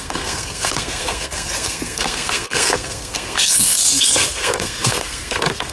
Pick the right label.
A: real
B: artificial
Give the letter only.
B